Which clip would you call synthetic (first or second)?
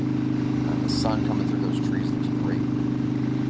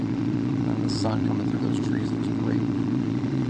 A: second